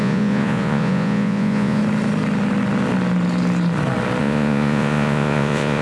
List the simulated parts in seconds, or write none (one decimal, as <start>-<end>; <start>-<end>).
0.0-1.8; 4.2-5.8